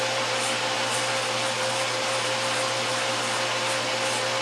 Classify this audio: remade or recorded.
recorded